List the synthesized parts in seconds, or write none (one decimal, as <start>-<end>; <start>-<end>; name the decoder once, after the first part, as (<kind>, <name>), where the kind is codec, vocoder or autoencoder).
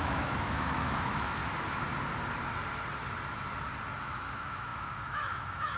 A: 0.0-1.4 (autoencoder, DAC-VAE); 4.0-5.8